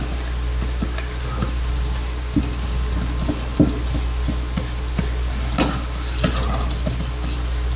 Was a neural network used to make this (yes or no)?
no